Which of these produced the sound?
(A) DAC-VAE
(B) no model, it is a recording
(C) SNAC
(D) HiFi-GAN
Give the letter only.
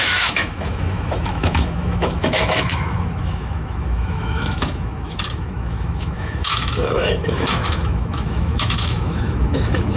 A